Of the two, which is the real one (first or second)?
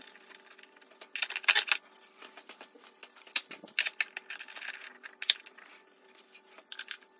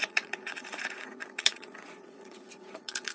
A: first